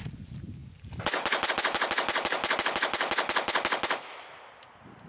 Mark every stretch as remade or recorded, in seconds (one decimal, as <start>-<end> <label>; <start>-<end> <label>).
0.0-5.1 recorded